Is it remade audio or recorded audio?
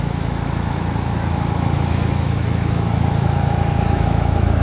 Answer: remade